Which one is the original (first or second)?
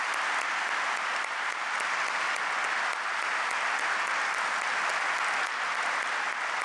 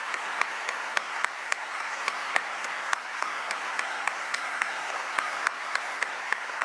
first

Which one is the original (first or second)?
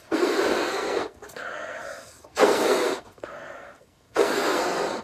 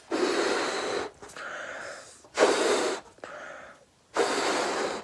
second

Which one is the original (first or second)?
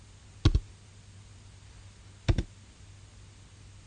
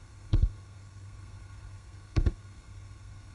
first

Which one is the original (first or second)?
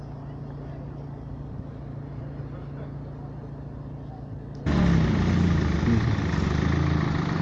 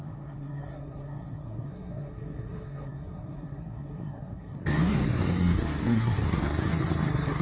first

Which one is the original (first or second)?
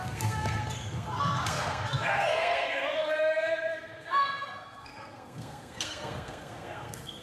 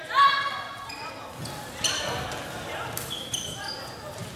second